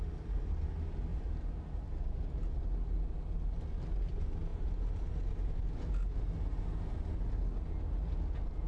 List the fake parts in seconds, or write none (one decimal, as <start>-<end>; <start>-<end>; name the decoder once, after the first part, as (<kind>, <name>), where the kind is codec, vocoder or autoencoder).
1.1-2.4 (vocoder, BigVGAN v2)